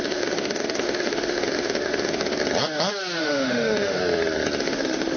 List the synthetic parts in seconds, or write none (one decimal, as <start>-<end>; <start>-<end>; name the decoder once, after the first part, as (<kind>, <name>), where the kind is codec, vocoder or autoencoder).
0.0-2.4 (autoencoder, DAC-VAE); 3.2-4.0; 4.6-5.2